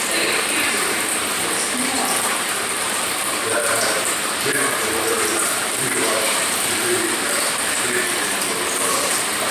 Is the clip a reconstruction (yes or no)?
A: yes